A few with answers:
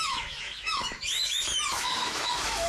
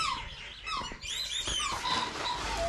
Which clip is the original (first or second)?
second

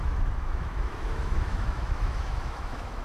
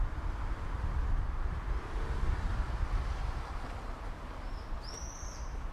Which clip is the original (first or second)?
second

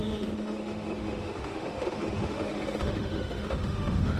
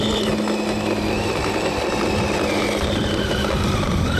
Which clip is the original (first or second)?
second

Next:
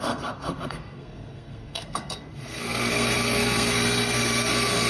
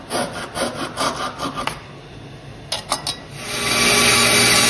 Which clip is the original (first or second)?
second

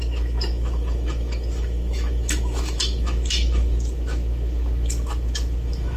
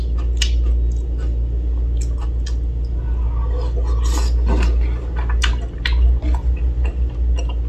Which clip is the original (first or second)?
second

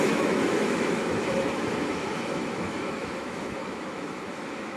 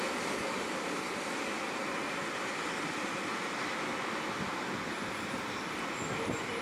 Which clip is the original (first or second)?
second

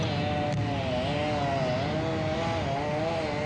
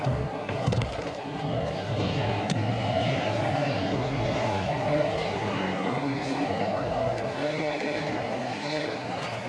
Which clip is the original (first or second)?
first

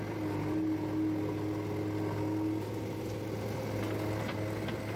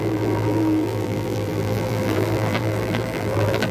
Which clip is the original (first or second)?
first